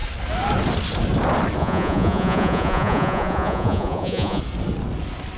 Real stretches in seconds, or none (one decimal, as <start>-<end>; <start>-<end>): 0.0-1.6; 4.4-5.4